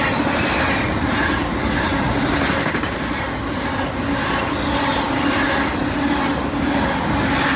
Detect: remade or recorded recorded